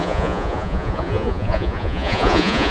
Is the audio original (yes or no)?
no